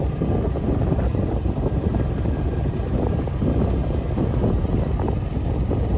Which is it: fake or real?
real